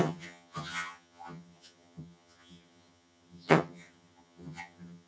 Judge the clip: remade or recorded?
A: remade